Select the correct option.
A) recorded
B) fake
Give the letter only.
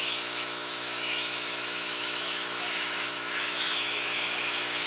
B